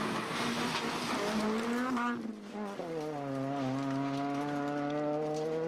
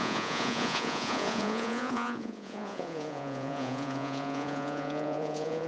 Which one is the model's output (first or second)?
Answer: second